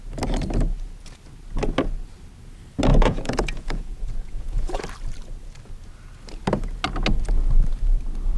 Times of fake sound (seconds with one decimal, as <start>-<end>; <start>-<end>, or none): 2.9-4.8